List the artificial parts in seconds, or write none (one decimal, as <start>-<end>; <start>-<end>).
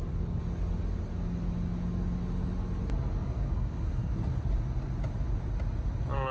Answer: 3.2-4.1